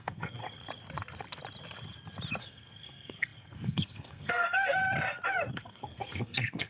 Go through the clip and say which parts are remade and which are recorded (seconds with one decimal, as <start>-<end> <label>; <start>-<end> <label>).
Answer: 0.0-0.4 remade; 0.4-2.4 recorded; 2.4-4.8 remade; 4.8-5.5 recorded; 5.5-6.7 remade